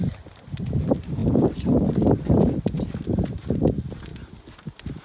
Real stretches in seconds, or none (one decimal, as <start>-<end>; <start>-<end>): 0.0-5.0